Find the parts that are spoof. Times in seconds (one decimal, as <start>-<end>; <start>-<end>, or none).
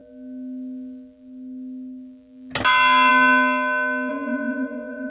4.1-5.1